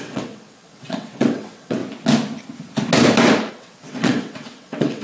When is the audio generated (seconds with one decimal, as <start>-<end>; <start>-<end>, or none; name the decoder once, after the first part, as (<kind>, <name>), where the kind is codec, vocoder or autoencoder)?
0.0-1.8 (vocoder, WaveNeXt); 3.5-5.0